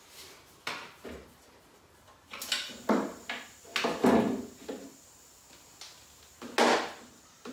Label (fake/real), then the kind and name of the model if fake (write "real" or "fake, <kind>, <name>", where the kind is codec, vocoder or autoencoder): real